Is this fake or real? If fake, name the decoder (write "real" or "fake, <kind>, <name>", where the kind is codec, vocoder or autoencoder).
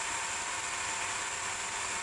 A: real